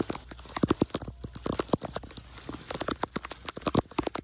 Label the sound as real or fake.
real